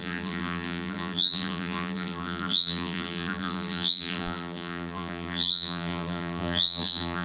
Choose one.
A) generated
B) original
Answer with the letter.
A